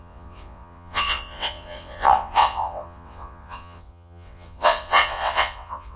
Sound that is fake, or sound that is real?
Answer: fake